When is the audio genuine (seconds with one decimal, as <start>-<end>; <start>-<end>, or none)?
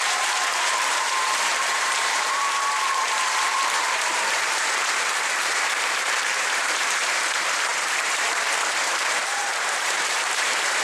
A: none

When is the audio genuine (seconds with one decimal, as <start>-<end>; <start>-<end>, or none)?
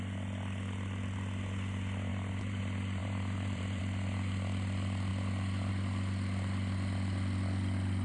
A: 0.0-2.1; 2.6-3.0; 3.8-8.0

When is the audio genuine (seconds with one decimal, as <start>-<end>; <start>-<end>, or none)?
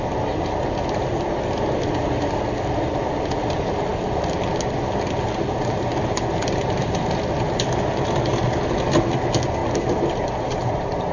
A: 0.0-8.4; 9.1-11.1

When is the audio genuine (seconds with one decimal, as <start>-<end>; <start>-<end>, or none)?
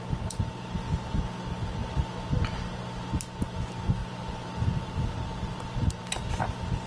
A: 0.0-4.0; 6.1-6.9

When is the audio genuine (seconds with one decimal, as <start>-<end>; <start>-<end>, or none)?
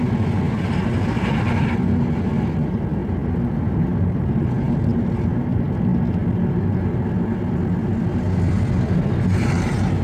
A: 0.0-10.0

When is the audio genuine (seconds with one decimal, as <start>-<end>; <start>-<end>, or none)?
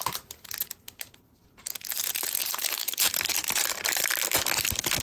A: 4.1-5.0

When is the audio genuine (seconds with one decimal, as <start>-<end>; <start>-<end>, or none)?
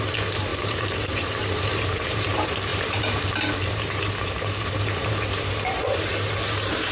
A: none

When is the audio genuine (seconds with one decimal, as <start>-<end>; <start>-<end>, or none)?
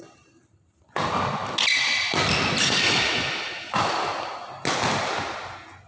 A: 0.0-5.9